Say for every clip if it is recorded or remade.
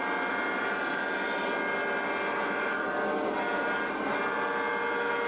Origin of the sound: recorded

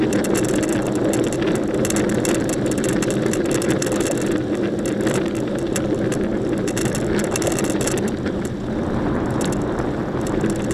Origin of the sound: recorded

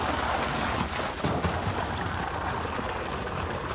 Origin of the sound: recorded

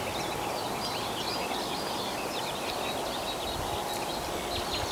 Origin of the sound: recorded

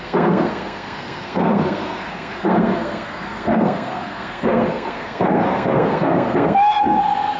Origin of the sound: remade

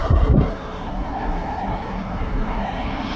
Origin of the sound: remade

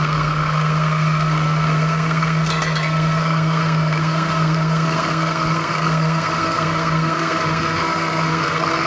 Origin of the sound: remade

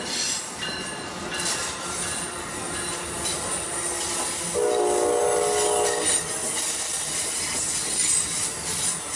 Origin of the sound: recorded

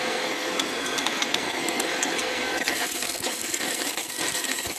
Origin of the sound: remade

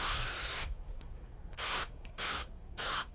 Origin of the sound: remade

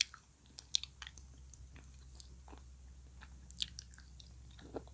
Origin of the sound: recorded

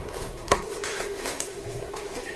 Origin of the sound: remade